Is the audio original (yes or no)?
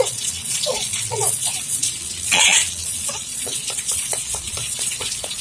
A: no